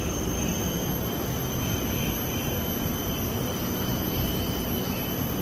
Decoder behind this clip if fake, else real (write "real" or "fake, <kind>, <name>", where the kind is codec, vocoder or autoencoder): real